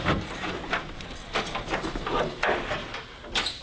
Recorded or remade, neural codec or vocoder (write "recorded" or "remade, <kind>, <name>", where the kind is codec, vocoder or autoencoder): recorded